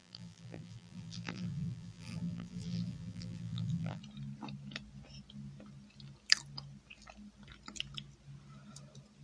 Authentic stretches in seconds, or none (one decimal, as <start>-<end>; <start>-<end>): 4.0-9.2